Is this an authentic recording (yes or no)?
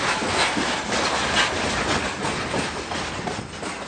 yes